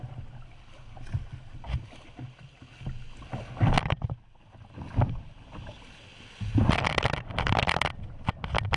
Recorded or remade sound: recorded